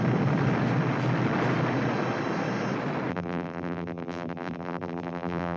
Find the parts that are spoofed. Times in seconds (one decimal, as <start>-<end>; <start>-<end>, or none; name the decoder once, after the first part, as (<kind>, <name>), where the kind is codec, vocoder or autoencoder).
3.1-5.6 (vocoder, BigVGAN v2)